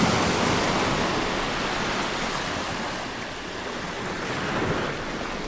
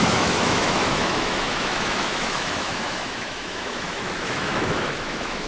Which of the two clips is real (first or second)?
first